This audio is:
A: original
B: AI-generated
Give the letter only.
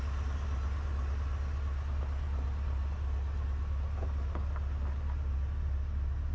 A